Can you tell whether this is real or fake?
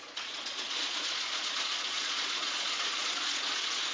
fake